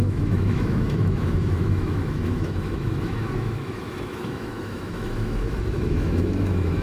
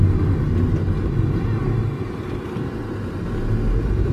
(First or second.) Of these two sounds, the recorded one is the second